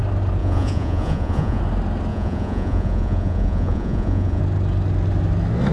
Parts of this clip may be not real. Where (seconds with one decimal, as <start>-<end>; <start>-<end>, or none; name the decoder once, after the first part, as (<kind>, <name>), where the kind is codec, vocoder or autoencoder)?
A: 0.4-1.6 (vocoder, Vocos); 2.1-4.4